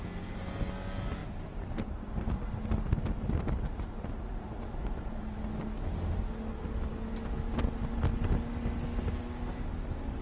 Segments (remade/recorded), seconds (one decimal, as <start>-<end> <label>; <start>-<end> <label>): 0.0-1.2 recorded; 1.2-2.4 remade; 2.4-3.7 recorded; 3.7-5.2 remade; 5.2-10.2 recorded